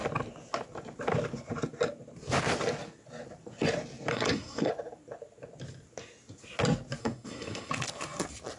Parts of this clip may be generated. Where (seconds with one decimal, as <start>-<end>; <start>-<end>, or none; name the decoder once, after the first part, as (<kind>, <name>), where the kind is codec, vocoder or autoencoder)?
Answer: 4.1-4.7 (codec, SNAC); 7.0-7.7

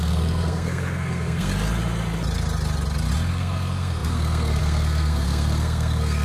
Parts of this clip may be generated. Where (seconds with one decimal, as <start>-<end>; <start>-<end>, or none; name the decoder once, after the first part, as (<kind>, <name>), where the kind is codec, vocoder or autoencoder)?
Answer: 0.0-1.5 (codec, SNAC); 3.3-6.2

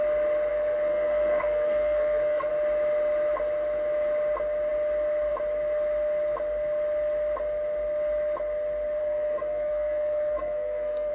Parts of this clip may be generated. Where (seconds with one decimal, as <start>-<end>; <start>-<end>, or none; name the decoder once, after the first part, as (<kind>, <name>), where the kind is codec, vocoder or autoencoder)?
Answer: 0.5-2.5 (codec, SNAC); 9.0-11.1

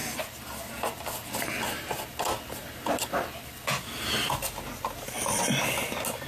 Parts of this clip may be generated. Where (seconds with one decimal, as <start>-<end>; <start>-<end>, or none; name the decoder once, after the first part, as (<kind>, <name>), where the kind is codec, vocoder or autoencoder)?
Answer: none

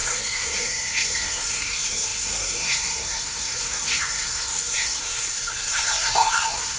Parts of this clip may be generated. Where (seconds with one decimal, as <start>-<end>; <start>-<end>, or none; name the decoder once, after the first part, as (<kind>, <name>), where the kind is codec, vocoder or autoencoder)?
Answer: 0.0-6.8 (codec, SNAC)

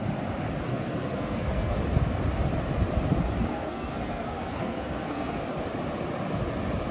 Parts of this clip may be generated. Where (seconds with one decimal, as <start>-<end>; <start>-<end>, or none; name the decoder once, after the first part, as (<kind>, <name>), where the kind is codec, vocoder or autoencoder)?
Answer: 0.7-1.8 (codec, SNAC); 3.5-5.4